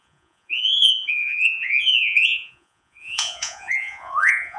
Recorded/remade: remade